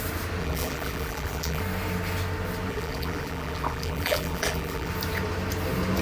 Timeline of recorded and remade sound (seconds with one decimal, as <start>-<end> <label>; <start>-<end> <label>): 0.0-0.4 recorded; 0.4-1.6 remade; 1.6-2.7 recorded; 2.7-4.9 remade; 4.9-6.0 recorded